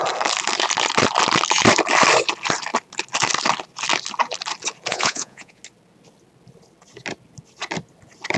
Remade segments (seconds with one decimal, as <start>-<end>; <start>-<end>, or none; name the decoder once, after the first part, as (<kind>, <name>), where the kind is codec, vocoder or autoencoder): 4.9-5.6 (vocoder, Vocos)